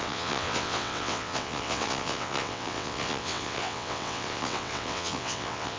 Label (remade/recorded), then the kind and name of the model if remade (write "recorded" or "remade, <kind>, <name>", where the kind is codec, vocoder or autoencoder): remade, vocoder, WaveNeXt